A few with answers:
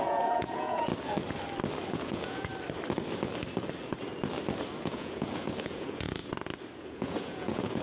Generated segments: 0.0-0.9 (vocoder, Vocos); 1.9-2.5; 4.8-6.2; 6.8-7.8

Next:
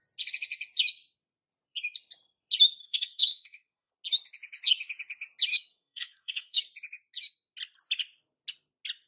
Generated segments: 2.8-3.9 (codec, SNAC); 5.5-6.6

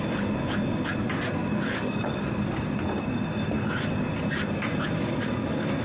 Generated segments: 1.4-2.3 (codec, DAC)

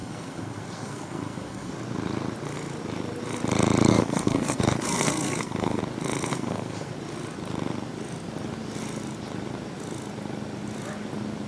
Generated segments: 0.0-1.7 (codec, SNAC); 3.9-5.8; 6.3-6.9

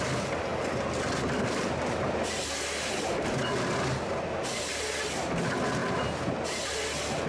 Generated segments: none

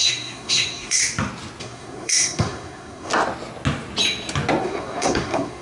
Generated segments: 0.0-1.0 (codec, SNAC); 1.6-3.1; 4.6-5.6

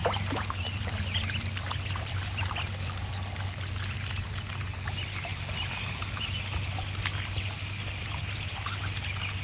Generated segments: 0.0-3.1 (vocoder, BigVGAN v2); 5.3-6.4

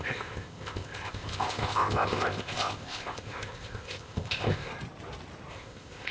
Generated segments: 0.0-4.7 (codec, ZipCodec); 5.5-6.1